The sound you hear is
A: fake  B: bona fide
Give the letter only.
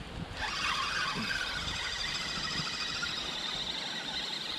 B